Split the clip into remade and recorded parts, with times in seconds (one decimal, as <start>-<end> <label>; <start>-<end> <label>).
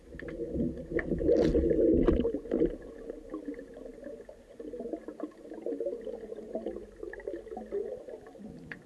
0.0-8.9 recorded